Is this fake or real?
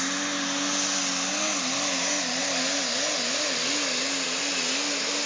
real